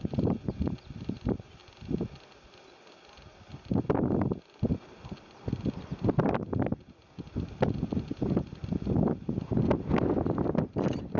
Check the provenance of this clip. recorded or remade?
recorded